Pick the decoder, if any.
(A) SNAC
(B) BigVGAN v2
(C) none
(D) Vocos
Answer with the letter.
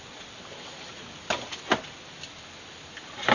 C